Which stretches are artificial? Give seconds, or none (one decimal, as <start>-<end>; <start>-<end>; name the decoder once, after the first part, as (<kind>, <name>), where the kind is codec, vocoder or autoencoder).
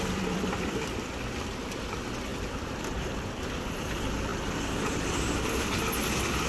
0.0-6.5 (vocoder, BigVGAN v2)